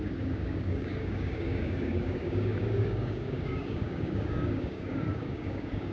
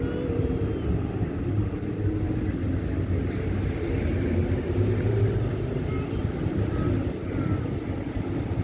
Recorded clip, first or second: second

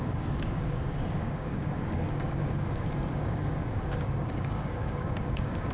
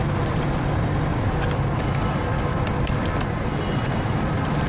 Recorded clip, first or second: second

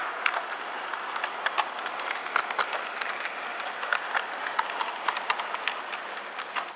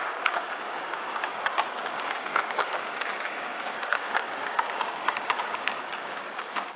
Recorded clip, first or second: first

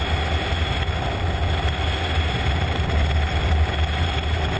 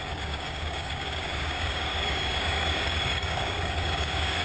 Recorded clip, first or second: first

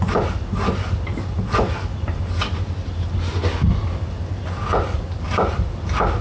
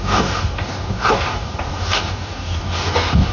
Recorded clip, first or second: first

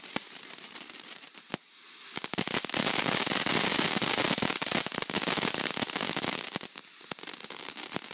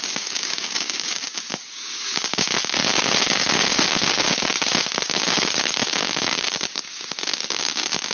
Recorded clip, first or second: first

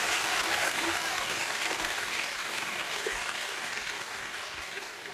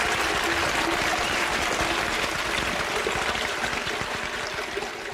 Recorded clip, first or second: second